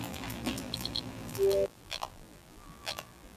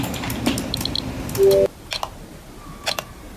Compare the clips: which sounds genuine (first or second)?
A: second